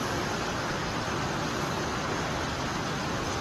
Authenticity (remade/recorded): recorded